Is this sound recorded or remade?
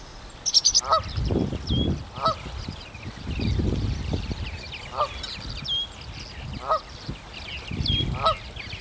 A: recorded